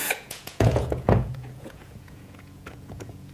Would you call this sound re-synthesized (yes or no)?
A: yes